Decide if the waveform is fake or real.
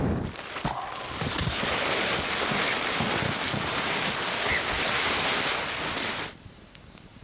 real